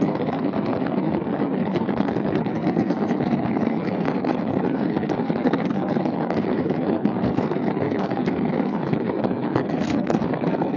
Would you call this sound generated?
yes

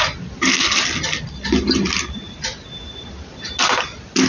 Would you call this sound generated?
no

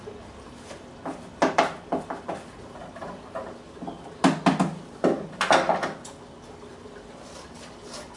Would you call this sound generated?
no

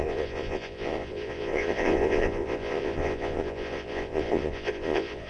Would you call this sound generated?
yes